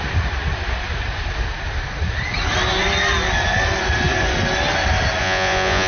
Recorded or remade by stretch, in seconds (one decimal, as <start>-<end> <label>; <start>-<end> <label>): 0.0-5.2 recorded; 5.2-5.9 remade